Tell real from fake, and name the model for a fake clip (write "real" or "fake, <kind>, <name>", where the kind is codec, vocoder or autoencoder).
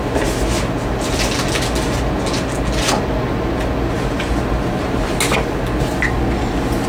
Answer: real